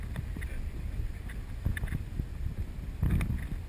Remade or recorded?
recorded